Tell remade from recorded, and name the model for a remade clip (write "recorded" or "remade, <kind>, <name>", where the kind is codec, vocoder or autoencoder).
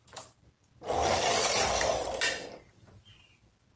recorded